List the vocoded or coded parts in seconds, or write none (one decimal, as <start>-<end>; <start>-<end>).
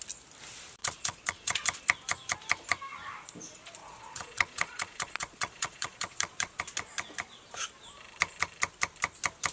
0.8-1.6; 3.8-6.6